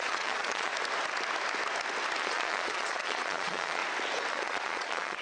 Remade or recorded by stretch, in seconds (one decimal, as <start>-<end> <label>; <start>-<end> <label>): 0.0-0.7 remade; 0.7-2.2 recorded; 2.2-3.8 remade; 3.8-4.3 recorded; 4.3-5.2 remade